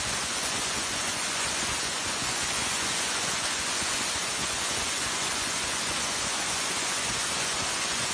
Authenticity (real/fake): fake